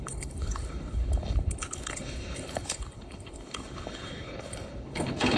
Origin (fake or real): fake